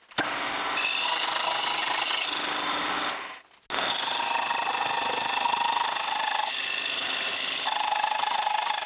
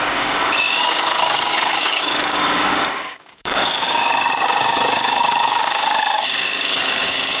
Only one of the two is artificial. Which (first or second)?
second